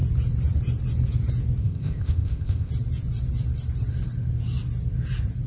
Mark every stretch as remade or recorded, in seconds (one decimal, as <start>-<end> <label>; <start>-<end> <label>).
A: 0.0-1.6 recorded; 1.6-2.7 remade; 2.7-5.5 recorded